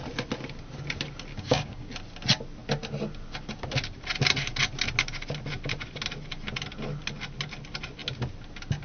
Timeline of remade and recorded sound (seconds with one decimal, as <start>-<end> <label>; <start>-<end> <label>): 0.0-1.3 recorded; 1.3-1.9 remade; 1.9-8.8 recorded